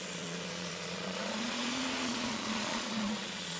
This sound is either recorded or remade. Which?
remade